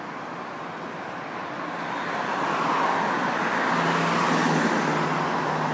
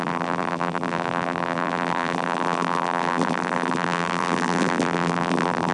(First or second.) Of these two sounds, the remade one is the second